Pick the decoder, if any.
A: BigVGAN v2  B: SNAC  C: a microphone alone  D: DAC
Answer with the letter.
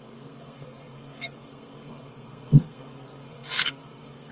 B